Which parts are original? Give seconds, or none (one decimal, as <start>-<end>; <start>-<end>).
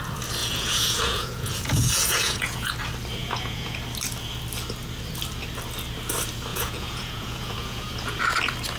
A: 0.0-0.4; 2.7-3.2; 3.8-6.5; 8.2-8.8